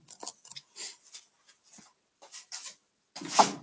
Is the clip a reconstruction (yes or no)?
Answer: no